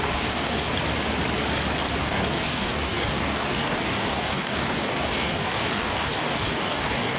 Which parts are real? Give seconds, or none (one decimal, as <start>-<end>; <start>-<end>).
0.7-2.0